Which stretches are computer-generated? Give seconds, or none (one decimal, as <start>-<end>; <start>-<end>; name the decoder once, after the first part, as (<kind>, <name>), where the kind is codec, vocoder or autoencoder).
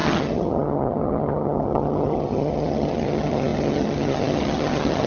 0.0-5.1 (vocoder, HiFi-GAN)